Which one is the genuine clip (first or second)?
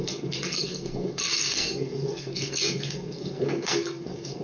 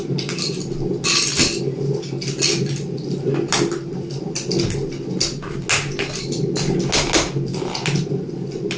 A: second